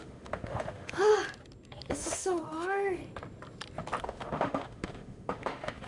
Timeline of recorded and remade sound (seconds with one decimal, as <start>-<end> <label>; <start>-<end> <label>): 0.0-1.1 remade; 1.1-1.9 recorded; 1.9-3.0 remade; 3.0-4.0 recorded; 4.0-5.9 remade